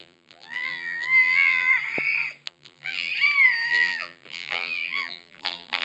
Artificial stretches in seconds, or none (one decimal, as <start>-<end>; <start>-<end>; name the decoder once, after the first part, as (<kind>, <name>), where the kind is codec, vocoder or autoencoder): 0.0-1.7 (vocoder, BigVGAN v2); 2.5-3.1; 3.7-5.8